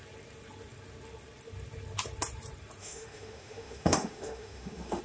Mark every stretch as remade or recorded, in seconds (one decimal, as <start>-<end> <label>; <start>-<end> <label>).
0.0-2.8 recorded; 2.8-5.0 remade